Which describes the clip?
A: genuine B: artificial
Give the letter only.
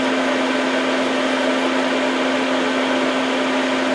A